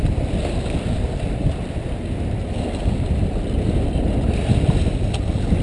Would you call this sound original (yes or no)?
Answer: yes